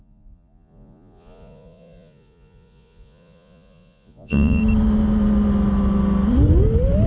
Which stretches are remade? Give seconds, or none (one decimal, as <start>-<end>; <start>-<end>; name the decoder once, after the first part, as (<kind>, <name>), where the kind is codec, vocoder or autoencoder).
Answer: 0.0-4.6 (vocoder, Vocos)